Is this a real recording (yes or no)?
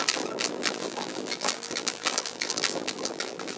no